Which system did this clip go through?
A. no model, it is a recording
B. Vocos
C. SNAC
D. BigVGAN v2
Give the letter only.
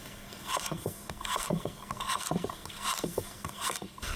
C